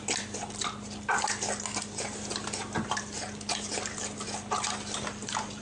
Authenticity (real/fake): real